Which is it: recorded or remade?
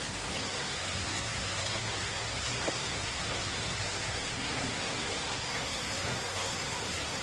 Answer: remade